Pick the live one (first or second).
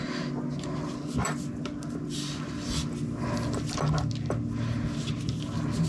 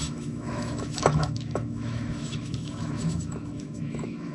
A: first